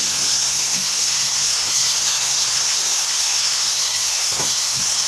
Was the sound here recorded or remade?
remade